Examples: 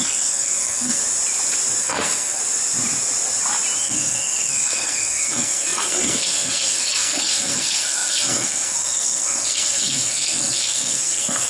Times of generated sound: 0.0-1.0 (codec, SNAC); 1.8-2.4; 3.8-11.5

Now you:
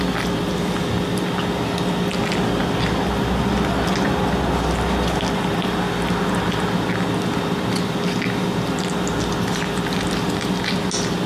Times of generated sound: none

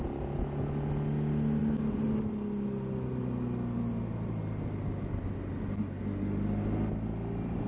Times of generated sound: none

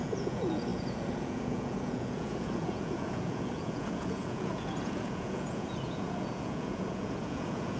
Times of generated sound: 0.0-7.8 (vocoder, Vocos)

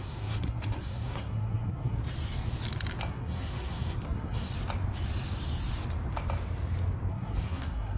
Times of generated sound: 0.0-2.0 (codec, SNAC); 3.1-4.5; 7.1-8.0

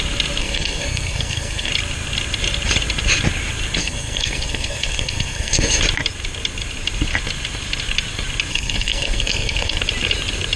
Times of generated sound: 0.4-1.7 (codec, SNAC); 3.8-5.8; 8.5-9.8

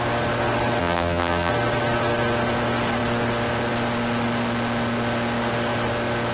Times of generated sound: 0.8-1.5 (vocoder, BigVGAN v2)

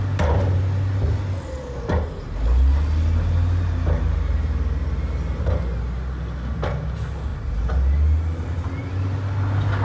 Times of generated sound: none